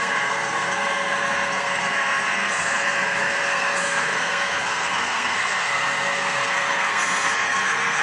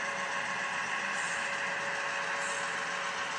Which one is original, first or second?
second